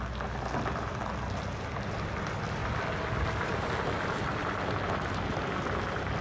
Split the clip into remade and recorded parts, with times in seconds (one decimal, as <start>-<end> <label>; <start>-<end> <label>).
0.0-6.2 recorded